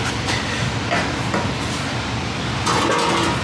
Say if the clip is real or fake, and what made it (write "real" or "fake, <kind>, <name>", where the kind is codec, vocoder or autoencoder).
real